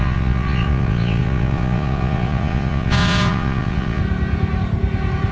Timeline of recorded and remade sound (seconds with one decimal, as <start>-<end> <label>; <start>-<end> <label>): 0.0-4.0 remade; 4.0-5.3 recorded